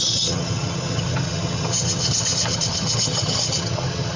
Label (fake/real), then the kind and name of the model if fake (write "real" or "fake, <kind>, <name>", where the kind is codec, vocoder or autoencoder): fake, vocoder, HiFi-GAN